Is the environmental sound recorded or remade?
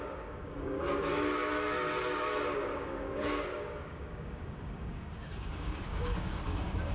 remade